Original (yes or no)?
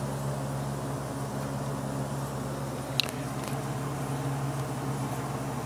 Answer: yes